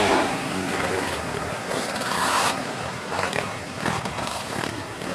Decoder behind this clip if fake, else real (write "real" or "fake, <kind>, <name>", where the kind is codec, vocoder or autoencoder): fake, codec, SNAC